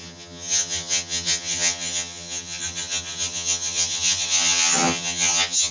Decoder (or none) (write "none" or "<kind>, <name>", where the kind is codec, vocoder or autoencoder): vocoder, HiFi-GAN